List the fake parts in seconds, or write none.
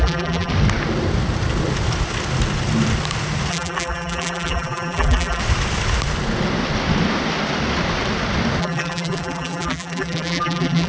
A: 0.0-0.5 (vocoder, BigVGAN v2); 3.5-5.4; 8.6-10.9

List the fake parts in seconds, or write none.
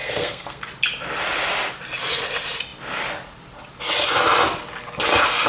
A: 0.0-0.6 (codec, SNAC)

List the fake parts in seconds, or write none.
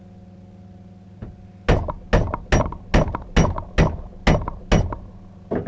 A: none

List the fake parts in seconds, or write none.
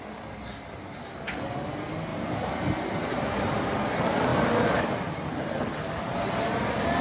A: none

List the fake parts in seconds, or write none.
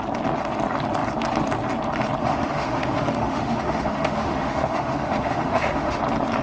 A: 2.2-6.0 (autoencoder, DAC-VAE)